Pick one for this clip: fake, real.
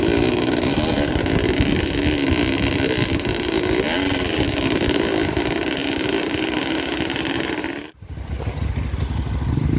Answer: real